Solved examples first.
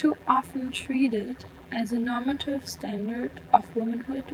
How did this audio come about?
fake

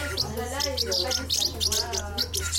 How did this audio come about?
real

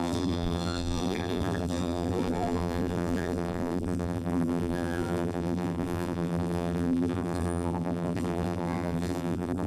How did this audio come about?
fake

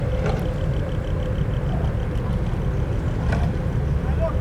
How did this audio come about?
real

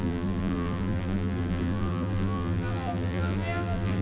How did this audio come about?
fake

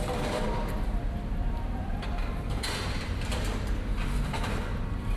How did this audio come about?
fake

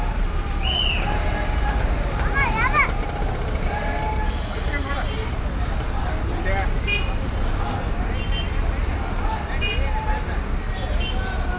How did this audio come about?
real